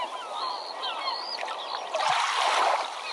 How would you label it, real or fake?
real